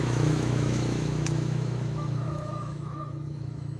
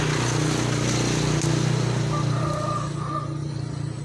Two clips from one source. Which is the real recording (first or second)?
second